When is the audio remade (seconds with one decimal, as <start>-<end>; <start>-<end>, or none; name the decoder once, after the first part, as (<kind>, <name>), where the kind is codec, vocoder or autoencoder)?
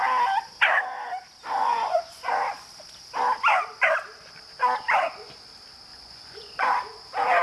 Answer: 1.6-2.7 (vocoder, Vocos); 5.9-6.7